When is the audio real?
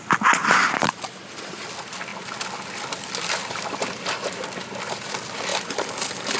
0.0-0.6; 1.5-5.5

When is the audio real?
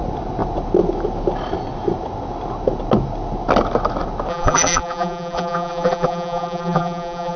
0.0-4.3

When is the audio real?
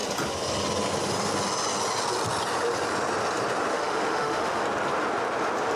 0.0-3.7; 4.6-5.8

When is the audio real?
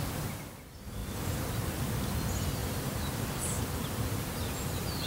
0.0-1.0; 1.7-2.6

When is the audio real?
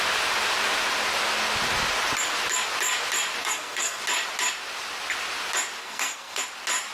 0.0-3.4; 4.0-5.8; 6.4-6.9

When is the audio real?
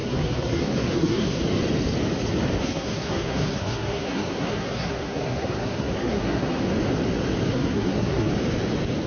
1.4-2.6; 6.6-7.5; 8.3-9.1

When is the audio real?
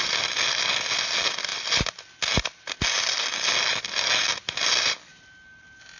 0.0-6.0